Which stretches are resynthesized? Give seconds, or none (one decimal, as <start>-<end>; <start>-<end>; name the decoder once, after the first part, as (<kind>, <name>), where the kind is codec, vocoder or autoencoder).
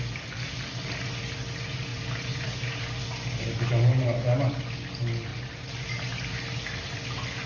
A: 1.9-2.8 (vocoder, BigVGAN v2); 3.9-4.5; 5.3-6.0